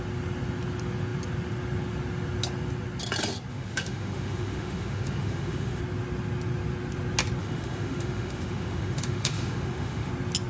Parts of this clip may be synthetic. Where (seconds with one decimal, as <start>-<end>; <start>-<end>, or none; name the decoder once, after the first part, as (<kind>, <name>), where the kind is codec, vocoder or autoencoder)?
3.5-5.8 (autoencoder, DAC-VAE); 7.4-10.1